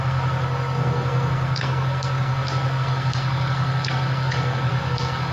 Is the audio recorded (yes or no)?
no